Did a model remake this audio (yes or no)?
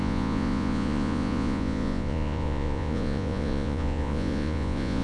yes